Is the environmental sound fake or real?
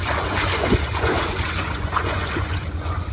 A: fake